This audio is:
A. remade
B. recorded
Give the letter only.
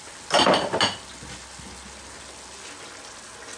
B